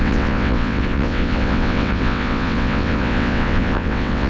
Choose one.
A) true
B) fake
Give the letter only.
B